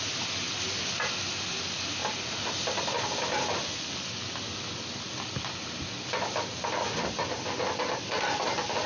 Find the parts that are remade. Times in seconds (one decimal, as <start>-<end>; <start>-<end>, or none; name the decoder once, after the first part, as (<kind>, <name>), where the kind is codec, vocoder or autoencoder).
none

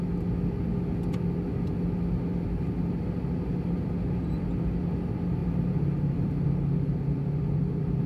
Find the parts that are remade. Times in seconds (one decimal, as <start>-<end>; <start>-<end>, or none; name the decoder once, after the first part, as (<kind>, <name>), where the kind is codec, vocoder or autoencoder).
5.4-8.1 (vocoder, BigVGAN v2)

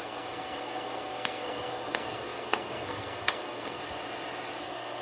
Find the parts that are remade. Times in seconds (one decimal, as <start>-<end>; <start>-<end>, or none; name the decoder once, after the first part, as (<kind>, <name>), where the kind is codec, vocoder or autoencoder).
0.0-3.8 (codec, SNAC); 4.6-5.0

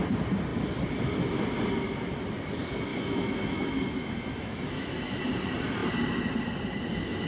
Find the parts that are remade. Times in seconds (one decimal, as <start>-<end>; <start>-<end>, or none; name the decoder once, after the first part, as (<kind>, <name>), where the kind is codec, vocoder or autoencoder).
2.9-5.2 (autoencoder, DAC-VAE)

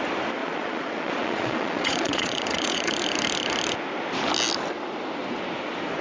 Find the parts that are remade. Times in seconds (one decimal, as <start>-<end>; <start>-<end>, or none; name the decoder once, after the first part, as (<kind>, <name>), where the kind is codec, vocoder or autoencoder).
0.4-2.9 (vocoder, Vocos)